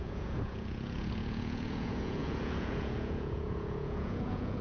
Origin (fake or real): fake